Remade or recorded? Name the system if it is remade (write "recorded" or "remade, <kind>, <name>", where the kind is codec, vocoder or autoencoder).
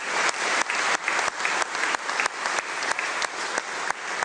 recorded